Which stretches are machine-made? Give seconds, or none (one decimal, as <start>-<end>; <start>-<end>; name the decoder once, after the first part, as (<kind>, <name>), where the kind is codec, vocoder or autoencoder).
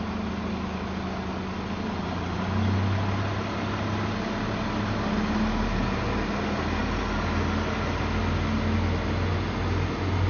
none